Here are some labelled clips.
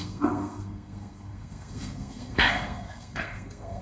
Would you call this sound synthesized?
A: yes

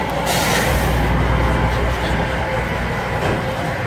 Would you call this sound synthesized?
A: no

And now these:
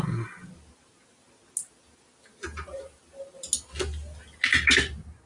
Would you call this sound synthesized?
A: no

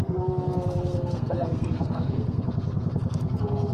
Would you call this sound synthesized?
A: yes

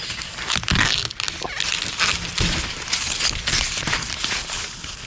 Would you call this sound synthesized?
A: no